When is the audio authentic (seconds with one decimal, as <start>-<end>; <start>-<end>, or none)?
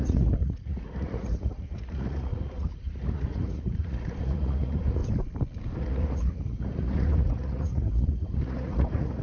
5.0-5.8